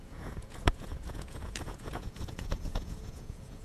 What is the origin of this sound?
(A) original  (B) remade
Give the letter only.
B